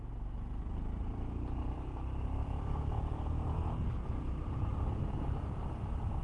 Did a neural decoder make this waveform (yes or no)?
no